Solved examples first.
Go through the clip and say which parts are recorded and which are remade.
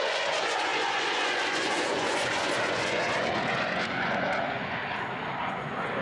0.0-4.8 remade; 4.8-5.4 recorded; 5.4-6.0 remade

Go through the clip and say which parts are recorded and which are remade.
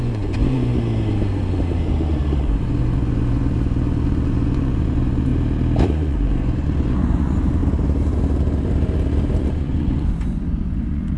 0.0-0.7 remade; 0.7-2.4 recorded; 2.4-5.3 remade; 5.3-5.9 recorded; 5.9-7.6 remade; 7.6-9.4 recorded; 9.4-11.2 remade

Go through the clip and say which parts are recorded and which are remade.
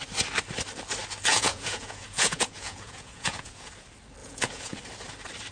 0.0-1.3 recorded; 1.3-3.7 remade; 3.7-4.2 recorded; 4.2-4.8 remade; 4.8-5.5 recorded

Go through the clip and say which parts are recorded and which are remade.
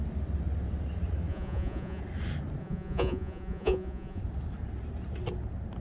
0.0-1.3 recorded; 1.3-2.0 remade; 2.0-2.6 recorded; 2.6-4.2 remade; 4.2-5.8 recorded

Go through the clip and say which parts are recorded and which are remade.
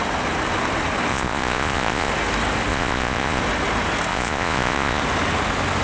0.0-1.1 recorded; 1.1-2.1 remade; 2.1-2.7 recorded; 2.7-3.4 remade; 3.4-4.1 recorded; 4.1-5.0 remade; 5.0-5.8 recorded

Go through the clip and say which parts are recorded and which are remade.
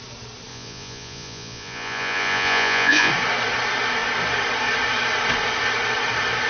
0.0-0.5 recorded; 0.5-3.1 remade; 3.1-6.5 recorded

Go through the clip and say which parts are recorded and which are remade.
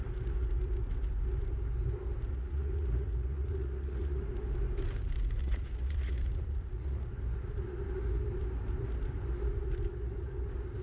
0.0-2.3 recorded; 2.3-4.2 remade; 4.2-5.4 recorded; 5.4-7.1 remade; 7.1-10.8 recorded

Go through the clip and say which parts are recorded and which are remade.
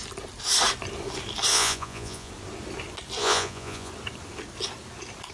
0.0-1.5 recorded; 1.5-2.3 remade; 2.3-3.2 recorded; 3.2-3.9 remade; 3.9-5.3 recorded